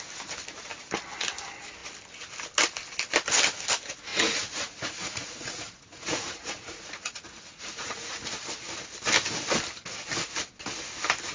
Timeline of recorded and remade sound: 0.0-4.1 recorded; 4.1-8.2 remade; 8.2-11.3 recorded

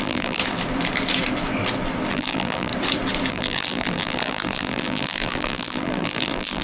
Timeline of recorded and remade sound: 0.0-0.4 remade; 0.4-2.1 recorded; 2.1-2.7 remade; 2.7-3.3 recorded; 3.3-6.6 remade

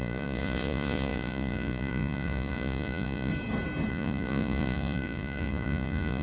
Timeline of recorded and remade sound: 0.0-3.3 remade; 3.3-3.9 recorded; 3.9-6.2 remade

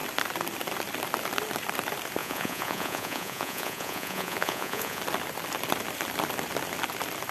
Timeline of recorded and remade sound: 0.0-2.2 recorded; 2.2-5.0 remade; 5.0-7.3 recorded

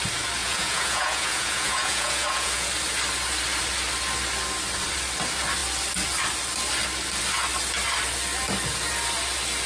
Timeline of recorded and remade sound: 0.0-0.4 recorded; 0.4-2.7 remade; 2.7-9.7 recorded

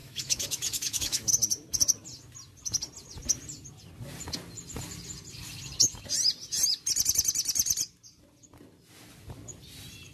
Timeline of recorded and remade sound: 0.0-1.3 remade; 1.3-10.1 recorded

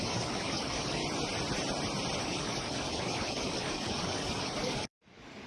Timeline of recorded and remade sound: 0.0-1.0 remade; 1.0-2.2 recorded; 2.2-5.5 remade

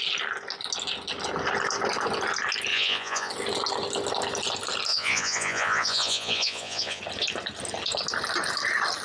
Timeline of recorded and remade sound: 0.0-2.7 recorded; 2.7-3.3 remade; 3.3-4.9 recorded; 4.9-7.0 remade; 7.0-9.0 recorded